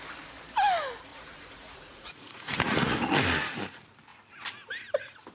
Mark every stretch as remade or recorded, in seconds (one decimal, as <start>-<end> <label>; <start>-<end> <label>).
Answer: 0.0-1.1 recorded; 1.1-3.1 remade; 3.1-5.3 recorded